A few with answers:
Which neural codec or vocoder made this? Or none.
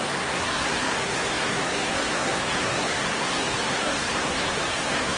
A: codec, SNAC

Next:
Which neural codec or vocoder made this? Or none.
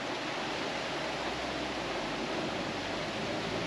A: none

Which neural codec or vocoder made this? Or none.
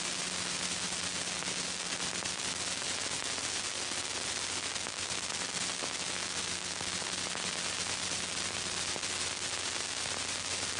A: none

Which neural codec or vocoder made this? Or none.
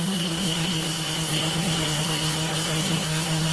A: codec, SNAC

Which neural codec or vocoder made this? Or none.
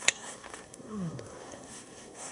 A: codec, SNAC